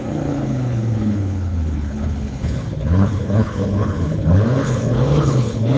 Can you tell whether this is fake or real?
fake